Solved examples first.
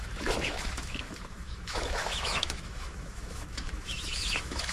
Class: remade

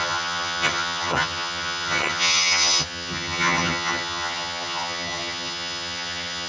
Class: remade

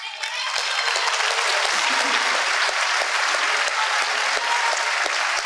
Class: remade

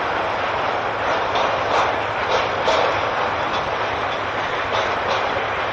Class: recorded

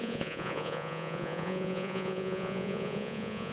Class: remade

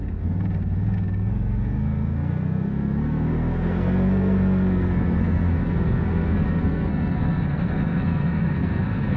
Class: remade